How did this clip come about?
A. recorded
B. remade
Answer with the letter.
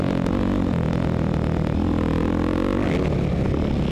A